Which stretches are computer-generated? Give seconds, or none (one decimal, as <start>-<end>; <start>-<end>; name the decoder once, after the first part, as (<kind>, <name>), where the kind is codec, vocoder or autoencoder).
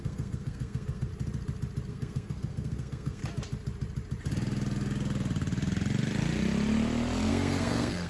0.0-1.1 (codec, SNAC); 1.9-3.2; 7.3-8.1